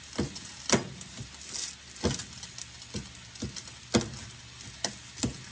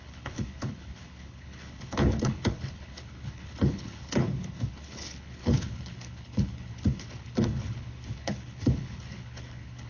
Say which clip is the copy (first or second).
second